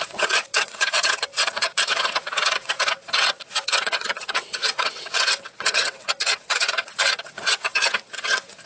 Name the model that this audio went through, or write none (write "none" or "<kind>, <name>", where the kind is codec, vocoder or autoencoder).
vocoder, WaveNeXt